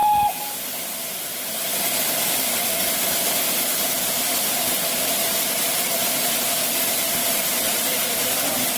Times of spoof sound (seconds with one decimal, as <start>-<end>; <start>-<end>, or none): 0.0-1.8; 5.2-6.4